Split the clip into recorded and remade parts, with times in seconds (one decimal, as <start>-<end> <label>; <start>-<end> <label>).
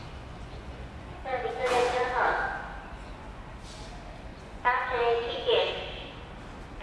0.0-3.6 remade; 3.6-4.3 recorded; 4.3-5.7 remade; 5.7-6.8 recorded